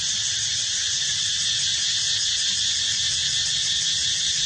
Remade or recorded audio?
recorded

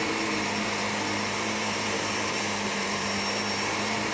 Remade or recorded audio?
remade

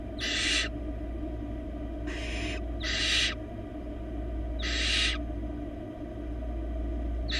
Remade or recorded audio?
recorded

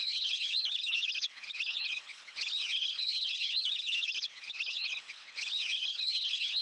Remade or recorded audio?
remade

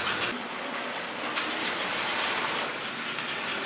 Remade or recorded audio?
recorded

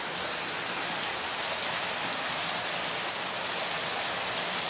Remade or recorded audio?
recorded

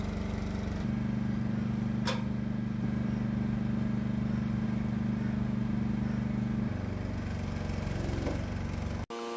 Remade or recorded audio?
recorded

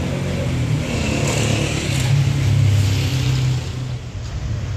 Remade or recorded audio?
recorded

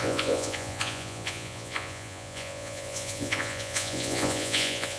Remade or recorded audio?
remade